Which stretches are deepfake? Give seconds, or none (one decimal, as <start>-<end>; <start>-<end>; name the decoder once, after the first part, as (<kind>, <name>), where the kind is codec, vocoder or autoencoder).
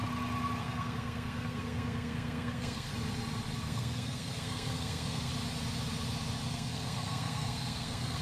0.6-2.9 (codec, SNAC); 3.6-5.3; 6.5-8.2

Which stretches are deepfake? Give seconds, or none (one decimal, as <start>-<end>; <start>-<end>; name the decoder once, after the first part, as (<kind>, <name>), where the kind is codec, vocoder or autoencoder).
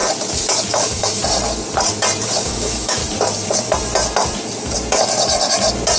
0.7-1.2 (autoencoder, DAC-VAE); 2.4-3.0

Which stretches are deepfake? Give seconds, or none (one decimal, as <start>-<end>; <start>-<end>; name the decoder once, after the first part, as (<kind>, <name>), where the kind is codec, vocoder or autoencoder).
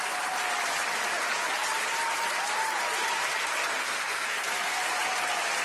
3.8-4.8 (codec, SNAC)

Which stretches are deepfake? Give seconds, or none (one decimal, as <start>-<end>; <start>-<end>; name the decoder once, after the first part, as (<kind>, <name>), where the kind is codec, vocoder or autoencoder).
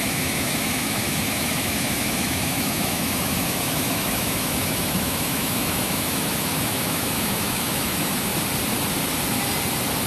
0.0-8.3 (autoencoder, DAC-VAE)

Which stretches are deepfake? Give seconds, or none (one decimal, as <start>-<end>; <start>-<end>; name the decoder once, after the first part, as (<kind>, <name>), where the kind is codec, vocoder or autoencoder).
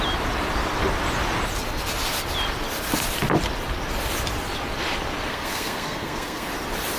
5.3-6.5 (codec, SNAC)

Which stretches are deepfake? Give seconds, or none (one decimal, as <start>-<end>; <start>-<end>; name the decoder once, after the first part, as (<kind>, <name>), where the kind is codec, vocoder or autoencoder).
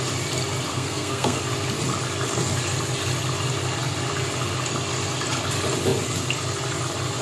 0.7-1.4 (codec, SNAC)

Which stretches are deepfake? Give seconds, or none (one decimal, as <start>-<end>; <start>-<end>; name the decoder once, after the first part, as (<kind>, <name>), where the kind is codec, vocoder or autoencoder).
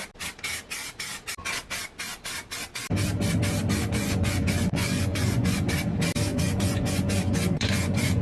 4.0-5.7 (vocoder, Vocos); 6.3-8.2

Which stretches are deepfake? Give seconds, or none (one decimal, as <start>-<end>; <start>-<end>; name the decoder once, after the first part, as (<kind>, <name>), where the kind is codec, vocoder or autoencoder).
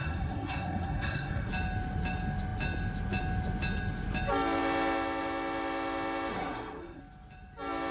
0.0-1.5 (codec, SNAC); 6.3-7.0